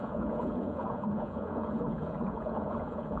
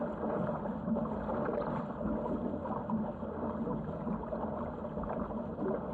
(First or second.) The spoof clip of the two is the first